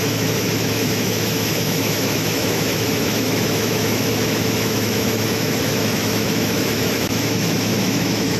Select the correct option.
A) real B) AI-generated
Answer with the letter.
B